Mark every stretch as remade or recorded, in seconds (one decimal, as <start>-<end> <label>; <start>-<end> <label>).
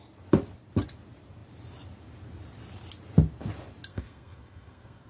0.0-3.9 recorded; 3.9-5.1 remade